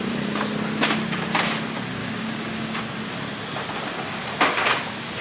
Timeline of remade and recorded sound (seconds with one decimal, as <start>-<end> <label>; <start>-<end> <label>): 0.0-2.0 recorded; 2.0-2.8 remade; 2.8-5.2 recorded